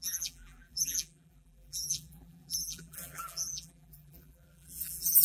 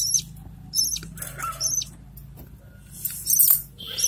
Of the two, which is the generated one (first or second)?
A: first